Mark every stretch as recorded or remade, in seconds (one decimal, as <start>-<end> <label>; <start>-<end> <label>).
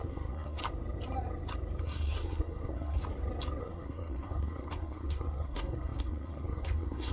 0.0-0.6 remade; 0.6-1.8 recorded; 1.8-3.0 remade; 3.0-3.6 recorded; 3.6-7.1 remade